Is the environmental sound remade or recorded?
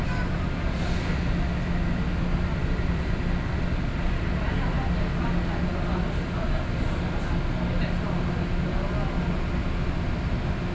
recorded